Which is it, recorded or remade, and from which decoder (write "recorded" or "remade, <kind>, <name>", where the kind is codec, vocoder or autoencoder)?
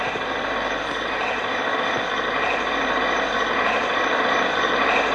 remade, vocoder, BigVGAN v2